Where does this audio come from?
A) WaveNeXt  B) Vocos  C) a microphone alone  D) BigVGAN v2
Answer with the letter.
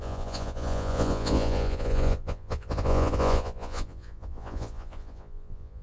B